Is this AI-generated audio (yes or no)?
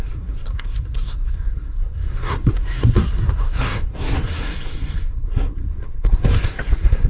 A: yes